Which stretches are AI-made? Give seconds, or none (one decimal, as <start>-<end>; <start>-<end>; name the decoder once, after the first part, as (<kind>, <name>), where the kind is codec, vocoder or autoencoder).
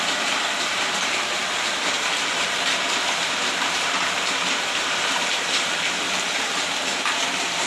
0.0-7.7 (vocoder, BigVGAN v2)